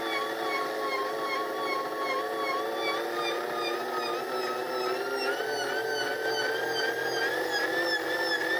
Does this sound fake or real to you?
real